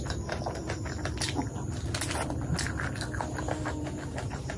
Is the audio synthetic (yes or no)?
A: no